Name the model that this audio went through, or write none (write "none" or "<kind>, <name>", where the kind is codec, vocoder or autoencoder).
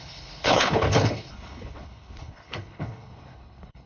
codec, HILCodec